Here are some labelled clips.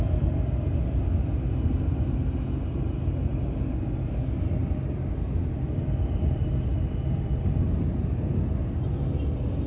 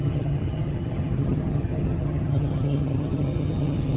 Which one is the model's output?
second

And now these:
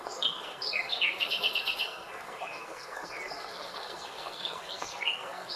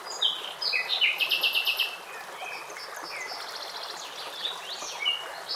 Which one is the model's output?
first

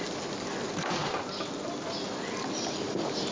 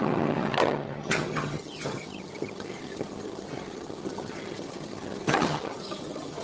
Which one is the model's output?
second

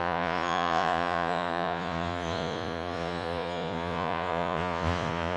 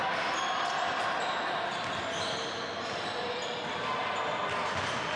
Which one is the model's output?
first